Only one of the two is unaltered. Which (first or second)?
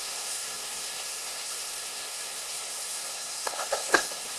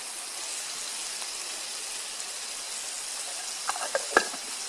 second